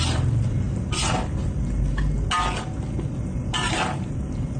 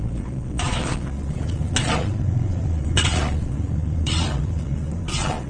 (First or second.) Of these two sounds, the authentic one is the first